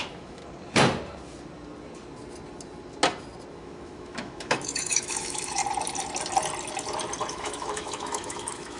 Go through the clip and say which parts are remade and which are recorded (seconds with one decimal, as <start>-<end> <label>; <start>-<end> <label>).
0.0-0.4 remade; 0.4-3.5 recorded; 3.5-5.6 remade; 5.6-7.3 recorded; 7.3-8.8 remade